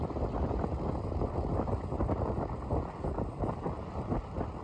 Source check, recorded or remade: recorded